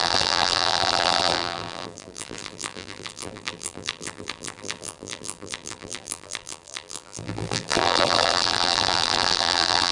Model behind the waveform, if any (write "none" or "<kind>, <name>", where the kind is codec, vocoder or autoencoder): vocoder, BigVGAN v2